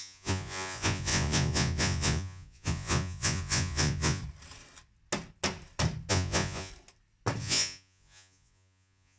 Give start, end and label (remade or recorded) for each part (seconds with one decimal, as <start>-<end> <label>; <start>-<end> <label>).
0.0-4.2 remade; 4.2-6.1 recorded; 6.1-6.7 remade; 6.7-7.4 recorded; 7.4-9.2 remade